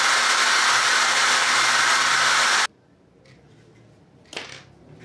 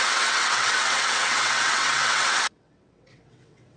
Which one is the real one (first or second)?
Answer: first